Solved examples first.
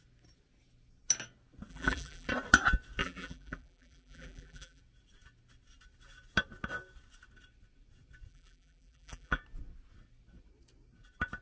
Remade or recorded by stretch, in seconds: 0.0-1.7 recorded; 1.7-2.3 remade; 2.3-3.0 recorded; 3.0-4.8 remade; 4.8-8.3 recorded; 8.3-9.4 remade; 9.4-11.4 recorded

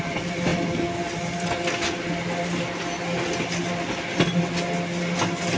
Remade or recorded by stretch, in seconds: 0.0-5.6 recorded

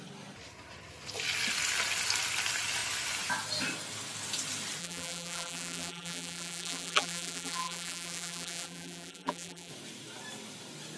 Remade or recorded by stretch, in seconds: 0.0-4.8 recorded; 4.8-9.7 remade; 9.7-11.0 recorded

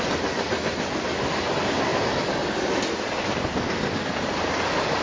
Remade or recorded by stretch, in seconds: 0.0-5.0 recorded

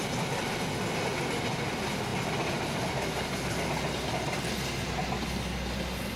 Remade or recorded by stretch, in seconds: 0.0-6.2 recorded

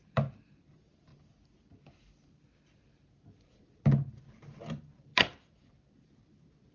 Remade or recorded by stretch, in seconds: 0.0-1.1 remade; 1.1-4.2 recorded; 4.2-6.7 remade